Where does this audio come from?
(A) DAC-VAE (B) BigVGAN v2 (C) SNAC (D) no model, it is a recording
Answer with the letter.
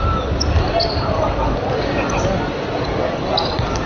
D